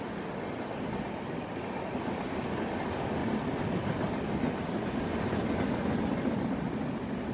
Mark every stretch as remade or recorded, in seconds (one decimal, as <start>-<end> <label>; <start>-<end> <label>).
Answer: 0.0-7.3 recorded